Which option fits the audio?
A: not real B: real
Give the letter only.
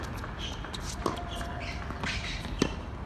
B